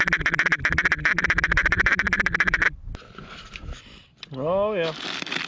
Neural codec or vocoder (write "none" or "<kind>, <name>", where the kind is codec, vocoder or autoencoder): none